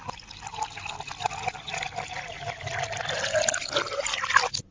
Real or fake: real